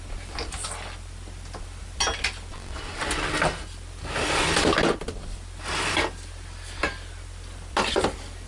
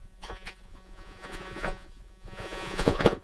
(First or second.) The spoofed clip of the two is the second